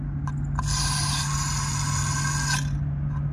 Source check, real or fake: real